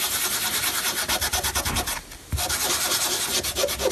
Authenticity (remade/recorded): recorded